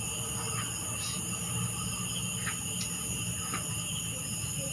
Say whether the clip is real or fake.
real